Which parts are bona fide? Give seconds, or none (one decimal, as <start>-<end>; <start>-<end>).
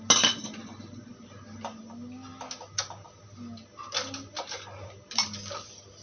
0.0-6.0